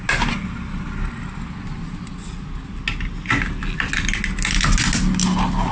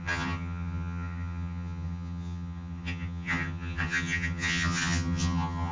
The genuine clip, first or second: first